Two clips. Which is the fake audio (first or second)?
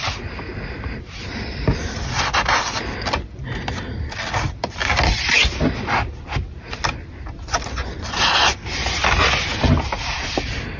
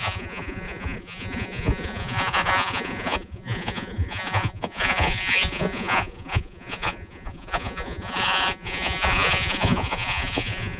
second